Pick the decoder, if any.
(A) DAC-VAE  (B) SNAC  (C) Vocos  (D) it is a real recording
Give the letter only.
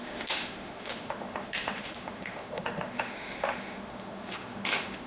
A